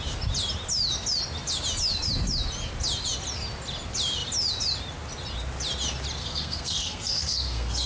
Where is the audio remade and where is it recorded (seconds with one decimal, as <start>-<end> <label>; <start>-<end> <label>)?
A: 0.0-6.2 recorded; 6.2-7.9 remade